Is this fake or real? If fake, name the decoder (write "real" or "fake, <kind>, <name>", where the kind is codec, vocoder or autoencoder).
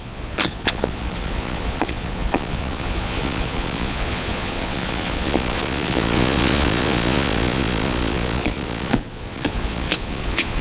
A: fake, vocoder, Vocos